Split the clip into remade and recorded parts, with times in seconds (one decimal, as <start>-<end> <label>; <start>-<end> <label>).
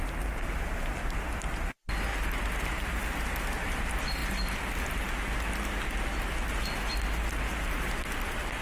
0.0-8.6 recorded